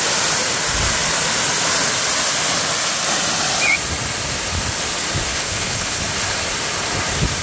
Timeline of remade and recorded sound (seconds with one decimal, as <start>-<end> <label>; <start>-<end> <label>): 0.0-5.3 recorded; 5.3-6.0 remade; 6.0-7.4 recorded